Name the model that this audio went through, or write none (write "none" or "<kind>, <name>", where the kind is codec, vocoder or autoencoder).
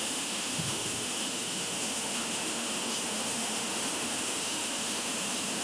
autoencoder, DAC-VAE